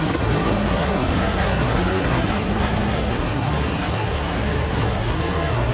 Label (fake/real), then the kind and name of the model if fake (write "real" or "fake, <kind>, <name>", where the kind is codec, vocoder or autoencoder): fake, codec, SNAC